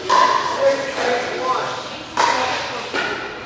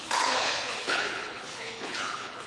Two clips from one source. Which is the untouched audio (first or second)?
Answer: first